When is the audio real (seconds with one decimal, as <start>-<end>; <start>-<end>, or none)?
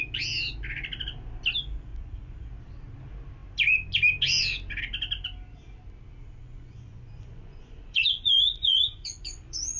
0.0-1.9; 2.5-6.4